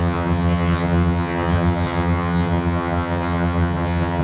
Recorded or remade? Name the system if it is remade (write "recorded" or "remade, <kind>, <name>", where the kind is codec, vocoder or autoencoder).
remade, vocoder, HiFi-GAN